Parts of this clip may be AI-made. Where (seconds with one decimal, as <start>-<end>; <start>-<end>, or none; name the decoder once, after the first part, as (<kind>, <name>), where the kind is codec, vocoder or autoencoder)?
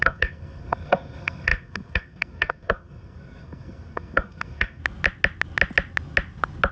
0.0-4.8 (codec, SNAC)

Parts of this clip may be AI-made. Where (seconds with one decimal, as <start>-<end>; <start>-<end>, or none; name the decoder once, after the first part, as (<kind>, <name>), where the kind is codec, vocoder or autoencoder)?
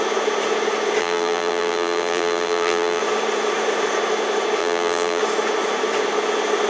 1.0-3.0 (vocoder, BigVGAN v2); 4.6-5.2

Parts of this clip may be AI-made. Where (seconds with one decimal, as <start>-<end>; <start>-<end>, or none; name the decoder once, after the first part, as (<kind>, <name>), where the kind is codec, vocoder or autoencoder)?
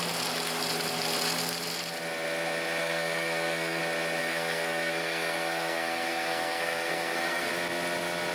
2.8-3.8 (codec, SNAC); 4.2-7.5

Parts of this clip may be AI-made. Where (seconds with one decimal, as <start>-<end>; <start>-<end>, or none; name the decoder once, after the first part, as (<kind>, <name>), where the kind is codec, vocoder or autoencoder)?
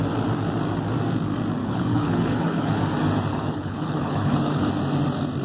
1.6-2.8 (codec, HILCodec); 3.3-4.7